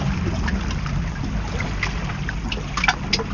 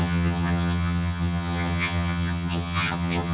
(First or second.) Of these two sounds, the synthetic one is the second